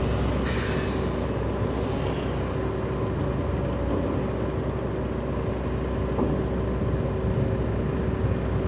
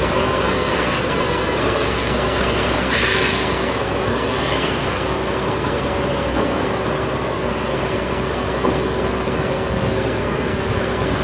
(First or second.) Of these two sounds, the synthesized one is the second